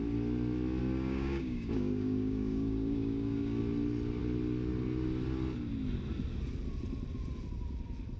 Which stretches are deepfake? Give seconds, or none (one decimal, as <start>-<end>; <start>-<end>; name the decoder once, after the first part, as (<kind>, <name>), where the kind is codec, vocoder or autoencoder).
0.8-3.6 (codec, DAC)